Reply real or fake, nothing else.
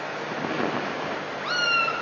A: real